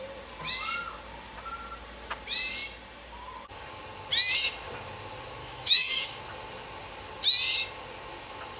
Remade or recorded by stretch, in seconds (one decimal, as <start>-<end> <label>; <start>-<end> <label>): 0.0-5.4 recorded; 5.4-6.2 remade; 6.2-8.6 recorded